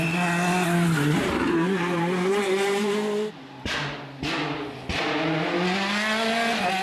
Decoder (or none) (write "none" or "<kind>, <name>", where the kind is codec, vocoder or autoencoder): none